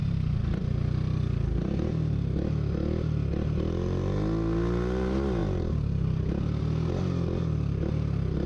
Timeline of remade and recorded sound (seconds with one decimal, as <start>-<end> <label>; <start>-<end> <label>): 0.0-8.5 recorded